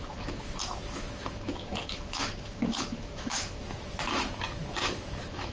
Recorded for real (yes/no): no